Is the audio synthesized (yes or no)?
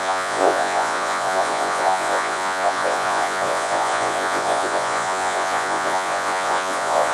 yes